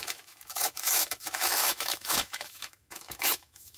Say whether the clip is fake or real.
fake